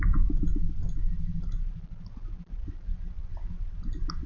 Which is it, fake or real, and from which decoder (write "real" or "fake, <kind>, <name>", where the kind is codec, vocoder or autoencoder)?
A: real